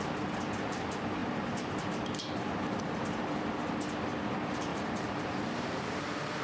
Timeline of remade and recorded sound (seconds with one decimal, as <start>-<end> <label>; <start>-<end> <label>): 0.0-4.7 recorded; 4.7-6.0 remade; 6.0-6.4 recorded